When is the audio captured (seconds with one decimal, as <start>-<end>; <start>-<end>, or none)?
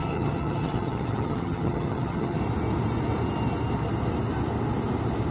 2.4-5.3